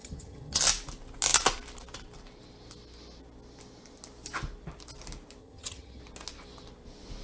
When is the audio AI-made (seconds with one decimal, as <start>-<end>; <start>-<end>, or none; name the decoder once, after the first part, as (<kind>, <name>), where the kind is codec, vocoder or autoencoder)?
0.0-0.6 (vocoder, HiFi-GAN); 5.4-6.0